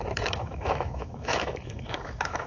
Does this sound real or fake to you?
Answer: fake